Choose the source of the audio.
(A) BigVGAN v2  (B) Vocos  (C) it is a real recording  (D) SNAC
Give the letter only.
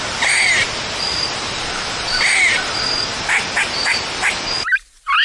C